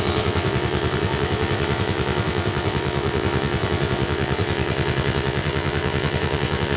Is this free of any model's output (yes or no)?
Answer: no